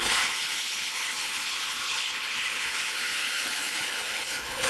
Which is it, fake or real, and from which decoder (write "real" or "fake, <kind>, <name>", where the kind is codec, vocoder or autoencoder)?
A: fake, codec, HILCodec